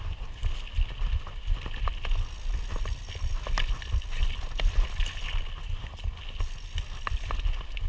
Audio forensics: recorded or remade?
recorded